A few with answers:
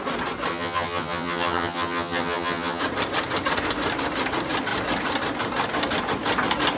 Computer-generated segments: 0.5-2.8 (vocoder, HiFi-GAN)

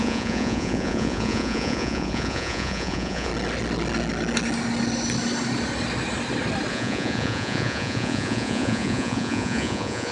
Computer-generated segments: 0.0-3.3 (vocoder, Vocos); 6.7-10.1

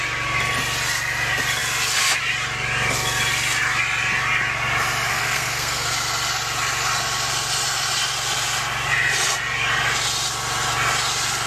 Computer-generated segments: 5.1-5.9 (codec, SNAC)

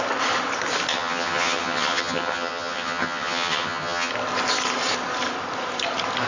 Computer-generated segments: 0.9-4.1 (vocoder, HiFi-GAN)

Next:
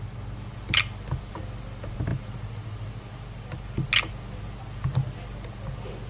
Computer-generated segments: 2.1-3.9 (vocoder, BigVGAN v2)

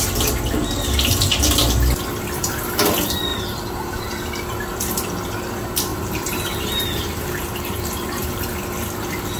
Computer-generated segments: 3.3-4.2 (vocoder, BigVGAN v2); 5.9-8.4

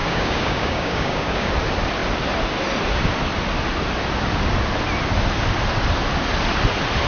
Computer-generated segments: 0.0-1.5 (codec, DAC)

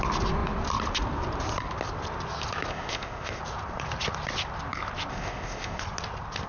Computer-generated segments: 2.7-3.4 (codec, ZipCodec); 5.1-5.8